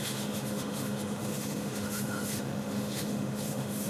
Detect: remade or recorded remade